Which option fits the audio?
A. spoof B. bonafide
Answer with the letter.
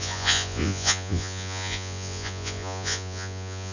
A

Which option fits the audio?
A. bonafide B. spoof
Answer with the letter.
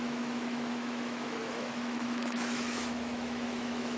B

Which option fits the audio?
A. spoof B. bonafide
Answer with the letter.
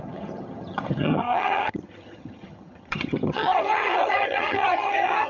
A